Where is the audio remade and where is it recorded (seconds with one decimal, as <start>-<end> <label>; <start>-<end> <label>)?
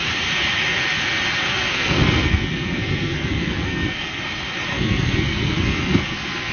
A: 0.0-1.5 recorded; 1.5-4.2 remade; 4.2-4.7 recorded; 4.7-6.5 remade